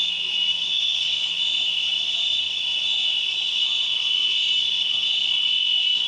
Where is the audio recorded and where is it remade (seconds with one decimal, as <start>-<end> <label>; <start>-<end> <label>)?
0.0-0.7 recorded; 0.7-1.3 remade; 1.3-6.1 recorded